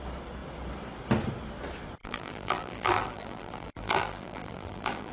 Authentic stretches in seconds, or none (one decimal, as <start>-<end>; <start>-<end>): 0.0-2.0